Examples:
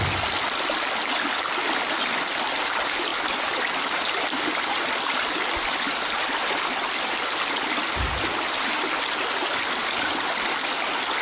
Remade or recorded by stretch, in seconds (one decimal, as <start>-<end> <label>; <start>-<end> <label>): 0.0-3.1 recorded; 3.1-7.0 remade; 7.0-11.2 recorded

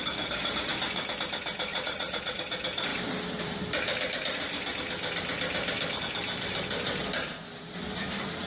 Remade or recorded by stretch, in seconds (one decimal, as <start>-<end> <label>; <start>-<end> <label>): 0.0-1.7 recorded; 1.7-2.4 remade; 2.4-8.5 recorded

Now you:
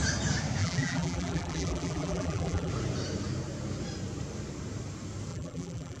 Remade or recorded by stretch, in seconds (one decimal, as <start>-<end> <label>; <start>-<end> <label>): 0.0-0.6 recorded; 0.6-2.7 remade; 2.7-5.3 recorded; 5.3-6.0 remade